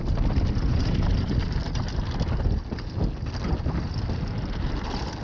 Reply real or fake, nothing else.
real